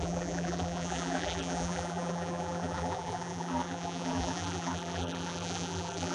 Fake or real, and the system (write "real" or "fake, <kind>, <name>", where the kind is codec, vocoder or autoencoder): fake, vocoder, BigVGAN v2